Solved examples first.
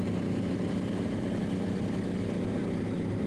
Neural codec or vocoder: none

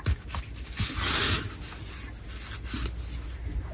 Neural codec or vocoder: none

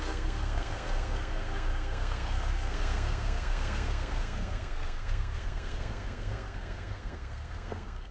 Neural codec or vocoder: codec, SNAC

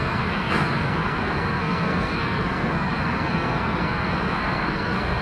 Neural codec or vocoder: codec, SNAC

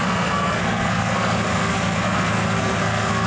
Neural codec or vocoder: codec, SNAC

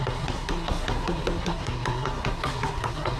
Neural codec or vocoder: codec, SNAC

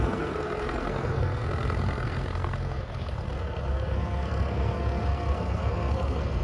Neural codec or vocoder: codec, SNAC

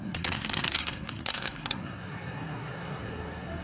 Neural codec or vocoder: codec, SNAC